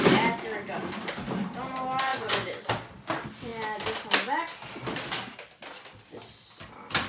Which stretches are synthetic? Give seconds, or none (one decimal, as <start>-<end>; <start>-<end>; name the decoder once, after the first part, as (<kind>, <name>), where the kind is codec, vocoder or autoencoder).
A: 2.1-2.7 (vocoder, Vocos)